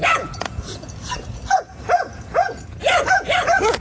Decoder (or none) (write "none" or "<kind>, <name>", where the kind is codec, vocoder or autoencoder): vocoder, Vocos